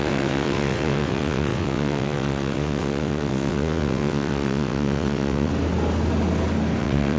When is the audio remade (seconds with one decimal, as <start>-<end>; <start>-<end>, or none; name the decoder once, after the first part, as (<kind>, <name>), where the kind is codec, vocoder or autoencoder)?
0.0-5.5 (vocoder, WaveNeXt); 6.8-7.2